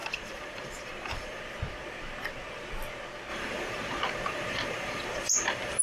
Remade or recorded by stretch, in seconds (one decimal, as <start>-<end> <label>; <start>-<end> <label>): 0.0-1.4 remade; 1.4-3.3 recorded; 3.3-5.8 remade